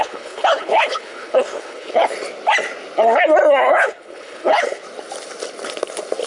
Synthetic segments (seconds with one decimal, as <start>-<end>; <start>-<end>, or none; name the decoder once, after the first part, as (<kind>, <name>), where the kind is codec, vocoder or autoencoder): 0.0-2.0 (codec, HILCodec); 3.7-4.8